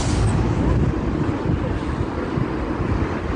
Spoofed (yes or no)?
no